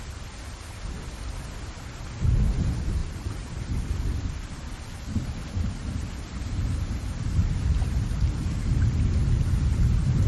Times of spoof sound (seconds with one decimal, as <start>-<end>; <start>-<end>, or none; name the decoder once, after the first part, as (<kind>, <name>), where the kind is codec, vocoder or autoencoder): 3.0-3.9 (vocoder, BigVGAN v2); 7.4-8.7